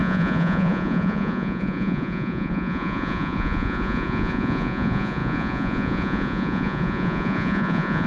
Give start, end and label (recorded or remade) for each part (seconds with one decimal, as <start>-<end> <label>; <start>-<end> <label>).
0.0-8.1 remade